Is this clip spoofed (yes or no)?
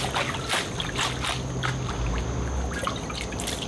no